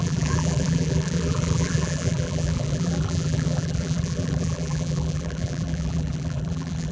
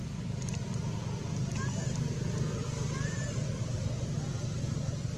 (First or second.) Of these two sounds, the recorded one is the second